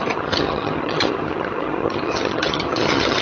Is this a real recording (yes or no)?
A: no